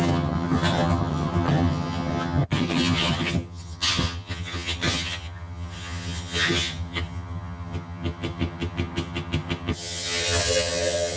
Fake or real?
fake